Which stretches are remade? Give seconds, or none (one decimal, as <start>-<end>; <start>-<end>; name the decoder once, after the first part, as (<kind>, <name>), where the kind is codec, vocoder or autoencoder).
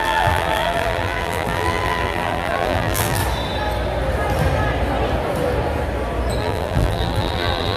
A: 0.0-3.2 (vocoder, BigVGAN v2); 6.4-7.8